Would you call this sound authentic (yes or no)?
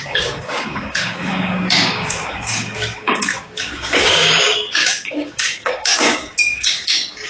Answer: no